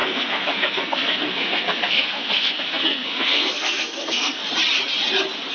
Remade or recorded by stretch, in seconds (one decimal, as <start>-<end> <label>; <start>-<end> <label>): 0.0-4.4 remade; 4.4-5.5 recorded